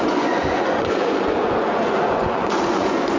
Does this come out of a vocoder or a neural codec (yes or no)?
yes